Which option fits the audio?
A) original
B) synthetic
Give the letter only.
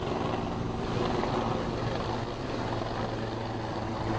A